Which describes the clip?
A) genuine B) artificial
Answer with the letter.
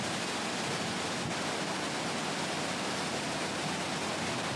A